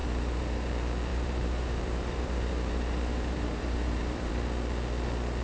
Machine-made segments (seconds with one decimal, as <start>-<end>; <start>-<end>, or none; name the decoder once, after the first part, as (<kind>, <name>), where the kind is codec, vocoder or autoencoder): 0.0-0.7 (vocoder, BigVGAN v2); 1.1-4.3